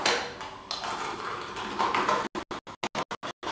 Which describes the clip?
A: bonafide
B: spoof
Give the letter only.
A